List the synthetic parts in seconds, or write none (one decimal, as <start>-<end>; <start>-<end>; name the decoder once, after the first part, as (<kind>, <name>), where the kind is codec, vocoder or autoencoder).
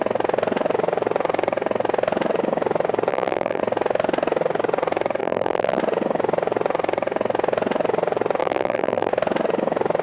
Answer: 3.1-3.6 (vocoder, BigVGAN v2); 5.2-5.8; 8.4-9.1